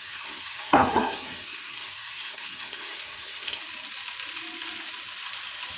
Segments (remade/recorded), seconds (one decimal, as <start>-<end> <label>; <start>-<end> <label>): 0.0-3.6 remade; 3.6-5.8 recorded